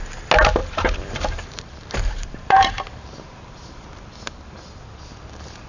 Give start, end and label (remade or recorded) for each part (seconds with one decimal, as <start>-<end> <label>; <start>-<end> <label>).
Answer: 0.0-0.6 recorded; 0.6-4.0 remade; 4.0-5.7 recorded